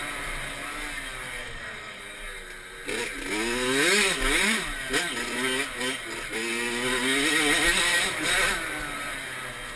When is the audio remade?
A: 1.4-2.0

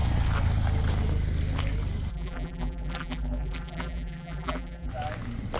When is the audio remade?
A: 2.1-4.9

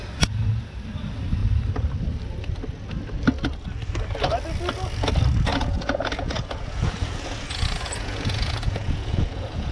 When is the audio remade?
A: 5.5-9.7

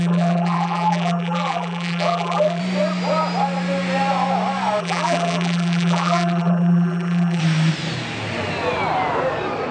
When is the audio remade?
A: 0.0-2.6; 4.8-7.4

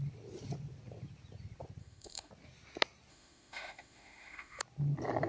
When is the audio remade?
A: 1.8-2.3; 3.1-4.6